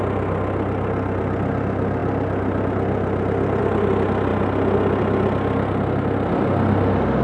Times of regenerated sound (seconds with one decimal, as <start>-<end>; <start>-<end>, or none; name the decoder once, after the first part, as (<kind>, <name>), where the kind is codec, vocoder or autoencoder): none